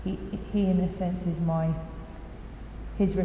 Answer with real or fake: real